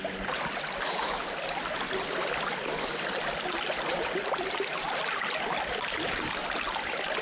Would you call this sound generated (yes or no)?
no